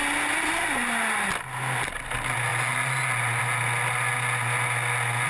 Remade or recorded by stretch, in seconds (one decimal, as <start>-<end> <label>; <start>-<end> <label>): 0.0-5.3 recorded